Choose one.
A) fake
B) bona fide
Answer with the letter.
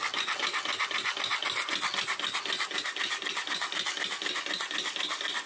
B